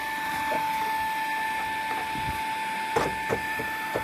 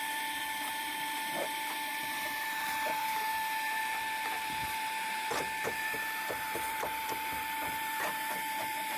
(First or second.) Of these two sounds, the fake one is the second